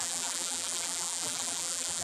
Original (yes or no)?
no